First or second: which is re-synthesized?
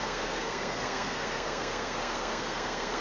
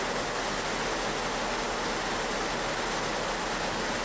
first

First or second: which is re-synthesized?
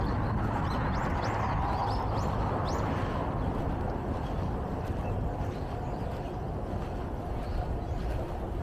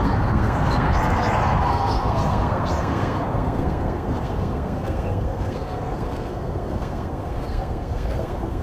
second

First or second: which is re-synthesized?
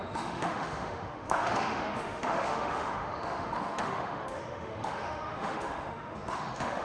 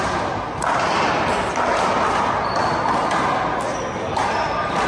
first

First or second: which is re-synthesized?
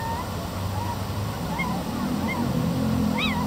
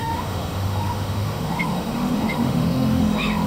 second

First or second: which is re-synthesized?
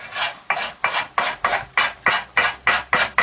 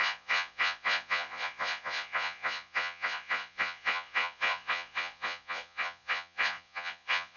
second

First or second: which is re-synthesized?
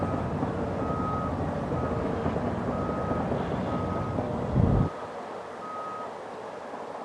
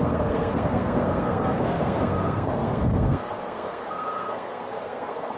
second